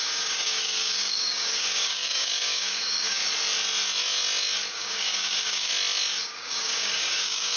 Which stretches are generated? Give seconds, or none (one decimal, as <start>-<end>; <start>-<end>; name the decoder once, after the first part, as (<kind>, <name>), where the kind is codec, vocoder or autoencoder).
0.0-3.2 (codec, DAC); 4.7-5.7; 6.2-7.6